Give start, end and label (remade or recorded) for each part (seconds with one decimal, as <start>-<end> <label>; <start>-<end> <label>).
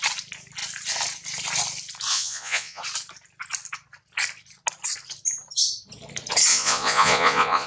0.0-2.1 recorded; 2.1-2.8 remade; 2.8-6.5 recorded; 6.5-7.7 remade